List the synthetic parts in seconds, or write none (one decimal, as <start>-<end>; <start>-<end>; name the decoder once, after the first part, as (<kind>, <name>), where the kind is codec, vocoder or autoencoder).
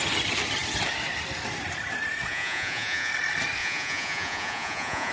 2.3-3.1 (vocoder, Vocos); 3.6-5.1